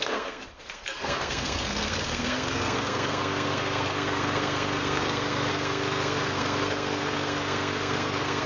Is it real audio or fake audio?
fake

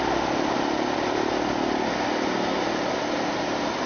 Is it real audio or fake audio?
real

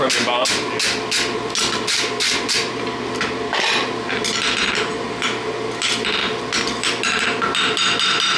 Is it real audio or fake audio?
real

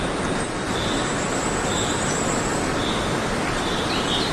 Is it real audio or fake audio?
real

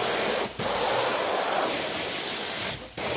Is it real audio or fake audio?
real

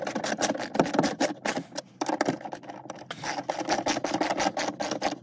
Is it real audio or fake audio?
real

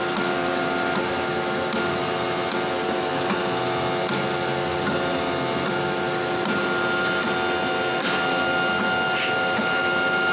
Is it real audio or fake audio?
real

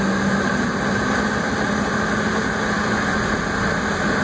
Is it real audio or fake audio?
real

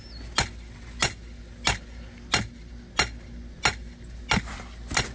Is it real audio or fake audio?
real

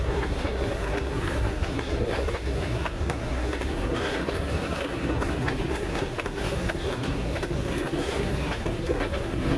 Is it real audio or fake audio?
fake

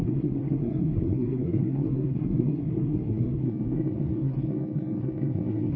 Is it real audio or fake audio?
fake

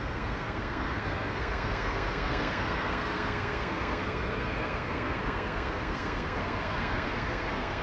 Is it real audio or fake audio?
fake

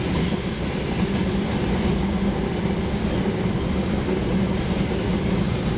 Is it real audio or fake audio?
real